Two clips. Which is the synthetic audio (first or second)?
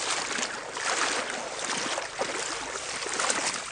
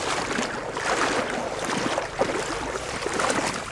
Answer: second